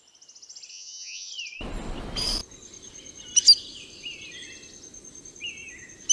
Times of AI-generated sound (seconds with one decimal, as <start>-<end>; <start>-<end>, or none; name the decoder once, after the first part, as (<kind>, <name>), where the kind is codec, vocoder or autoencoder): 0.7-1.3 (vocoder, Vocos)